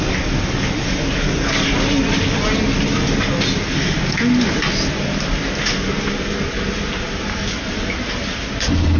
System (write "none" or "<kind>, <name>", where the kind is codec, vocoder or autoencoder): none